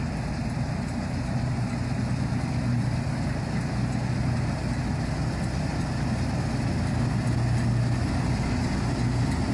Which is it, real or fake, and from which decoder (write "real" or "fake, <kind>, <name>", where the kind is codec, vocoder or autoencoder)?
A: real